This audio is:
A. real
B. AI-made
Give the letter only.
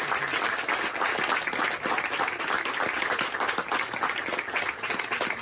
A